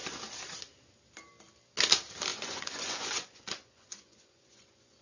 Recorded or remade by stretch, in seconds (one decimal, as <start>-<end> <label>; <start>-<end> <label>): 0.0-2.3 recorded; 2.3-5.0 remade